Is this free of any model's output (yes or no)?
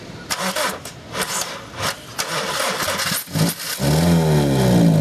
yes